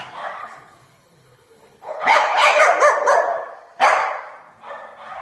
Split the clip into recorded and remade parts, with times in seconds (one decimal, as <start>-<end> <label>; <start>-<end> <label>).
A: 0.0-0.4 recorded; 0.4-2.6 remade; 2.6-5.2 recorded